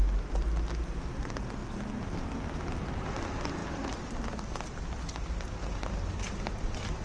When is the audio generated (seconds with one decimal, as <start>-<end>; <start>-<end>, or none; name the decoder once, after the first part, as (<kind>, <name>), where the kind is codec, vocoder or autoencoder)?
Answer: none